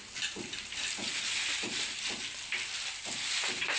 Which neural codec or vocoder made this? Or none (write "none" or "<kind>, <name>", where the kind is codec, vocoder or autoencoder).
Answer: none